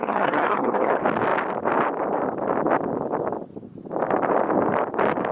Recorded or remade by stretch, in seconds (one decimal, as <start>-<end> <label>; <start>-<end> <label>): 0.0-0.9 remade; 0.9-5.3 recorded